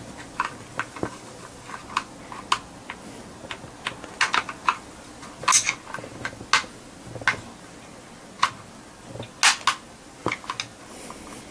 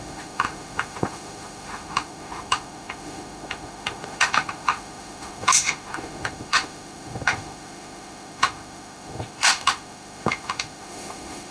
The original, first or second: first